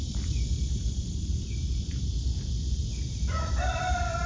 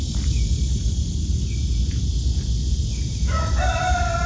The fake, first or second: first